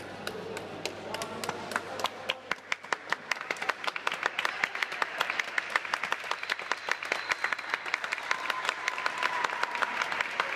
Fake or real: real